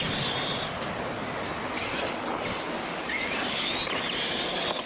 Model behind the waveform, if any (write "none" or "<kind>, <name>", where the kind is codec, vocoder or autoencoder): none